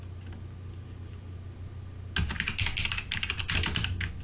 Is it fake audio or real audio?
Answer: real